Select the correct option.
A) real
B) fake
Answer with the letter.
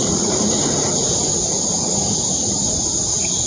B